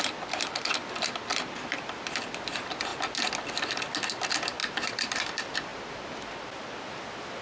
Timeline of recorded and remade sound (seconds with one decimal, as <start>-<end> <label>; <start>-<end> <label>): 0.0-1.3 recorded; 1.3-2.2 remade; 2.2-4.6 recorded; 4.6-5.3 remade; 5.3-5.7 recorded; 5.7-6.3 remade; 6.3-7.4 recorded